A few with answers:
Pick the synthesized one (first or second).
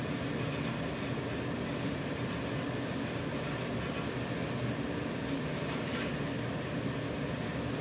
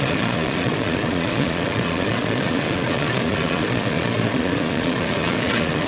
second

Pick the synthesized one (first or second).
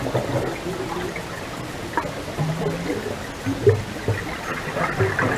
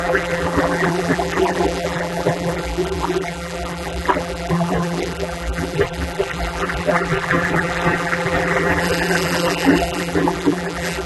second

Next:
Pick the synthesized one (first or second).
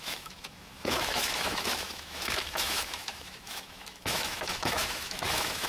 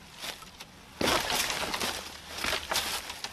first